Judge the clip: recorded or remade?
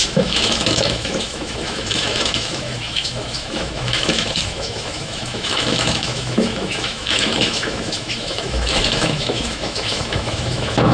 remade